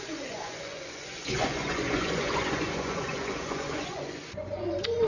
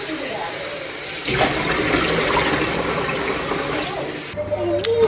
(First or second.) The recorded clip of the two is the second